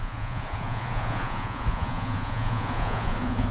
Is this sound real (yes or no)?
no